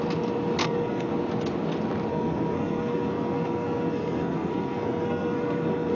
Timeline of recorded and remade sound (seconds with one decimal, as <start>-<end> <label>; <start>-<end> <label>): 0.0-0.6 recorded; 0.6-1.1 remade; 1.1-2.1 recorded; 2.1-5.9 remade